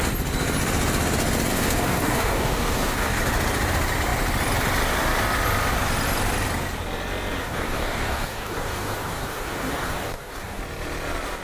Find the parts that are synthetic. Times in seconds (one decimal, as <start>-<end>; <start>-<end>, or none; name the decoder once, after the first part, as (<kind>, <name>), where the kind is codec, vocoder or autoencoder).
1.5-3.2 (codec, DAC); 7.4-10.6